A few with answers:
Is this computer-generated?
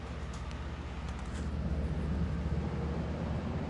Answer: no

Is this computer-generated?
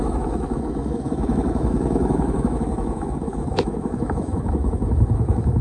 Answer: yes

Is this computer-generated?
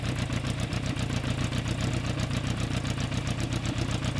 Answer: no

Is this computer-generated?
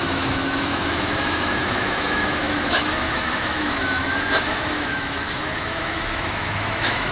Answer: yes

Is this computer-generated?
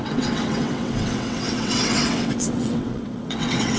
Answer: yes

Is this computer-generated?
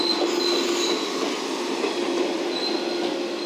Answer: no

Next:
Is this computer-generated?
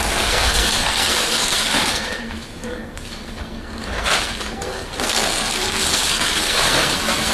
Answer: yes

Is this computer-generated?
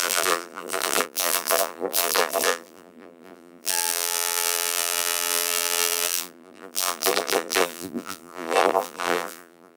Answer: yes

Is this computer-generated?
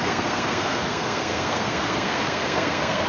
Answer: yes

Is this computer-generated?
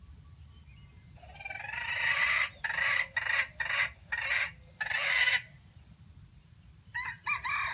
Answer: no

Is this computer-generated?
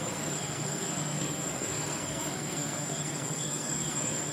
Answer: yes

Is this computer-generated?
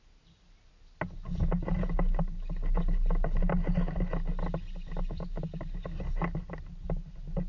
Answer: no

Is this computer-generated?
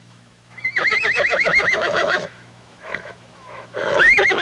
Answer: yes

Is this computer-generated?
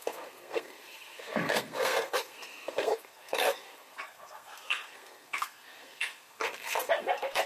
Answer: yes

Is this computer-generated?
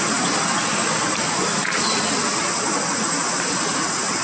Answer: no